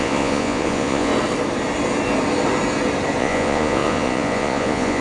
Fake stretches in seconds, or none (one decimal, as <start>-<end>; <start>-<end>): 0.0-1.1; 3.2-5.0